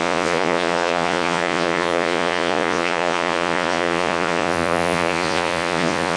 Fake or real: fake